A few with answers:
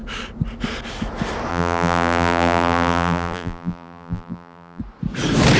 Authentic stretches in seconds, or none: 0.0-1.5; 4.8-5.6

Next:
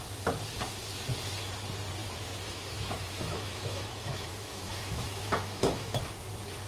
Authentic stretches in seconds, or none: 0.0-2.0; 6.0-6.7